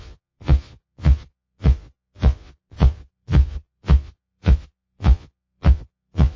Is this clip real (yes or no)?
no